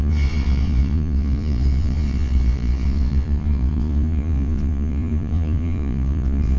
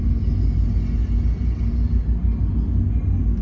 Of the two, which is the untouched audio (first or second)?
second